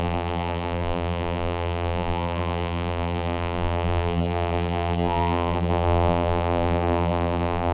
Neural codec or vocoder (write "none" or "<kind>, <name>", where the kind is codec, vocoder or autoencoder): vocoder, BigVGAN v2